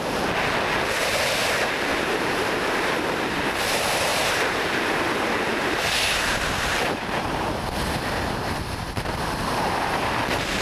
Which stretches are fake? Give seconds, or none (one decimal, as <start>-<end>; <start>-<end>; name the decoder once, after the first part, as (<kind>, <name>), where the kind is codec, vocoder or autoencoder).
1.9-2.9 (vocoder, BigVGAN v2); 4.1-4.7; 5.5-10.2